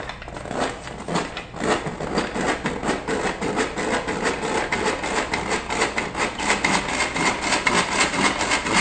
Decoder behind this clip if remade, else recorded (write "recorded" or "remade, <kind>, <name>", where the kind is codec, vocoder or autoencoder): recorded